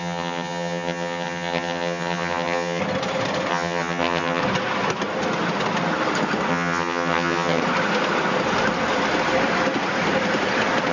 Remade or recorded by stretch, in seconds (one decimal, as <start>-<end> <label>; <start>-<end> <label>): 0.0-2.8 remade; 2.8-3.5 recorded; 3.5-4.4 remade; 4.4-6.5 recorded; 6.5-7.6 remade; 7.6-10.9 recorded